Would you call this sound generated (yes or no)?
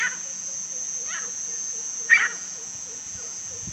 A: yes